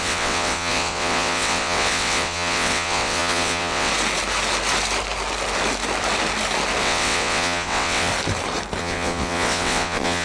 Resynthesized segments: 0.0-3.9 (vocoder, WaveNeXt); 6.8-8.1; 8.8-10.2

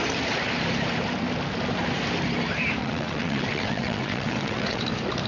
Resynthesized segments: 2.8-4.8 (vocoder, WaveNeXt)

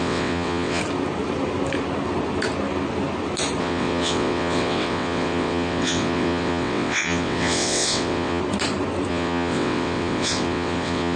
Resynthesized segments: 0.0-0.8 (vocoder, WaveNeXt); 3.6-8.4; 9.1-11.2

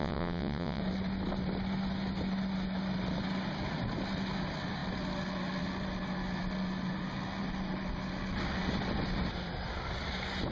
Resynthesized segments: 0.0-0.8 (vocoder, WaveNeXt)